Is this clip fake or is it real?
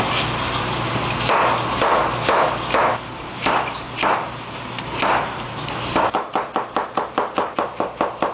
real